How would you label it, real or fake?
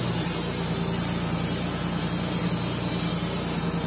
real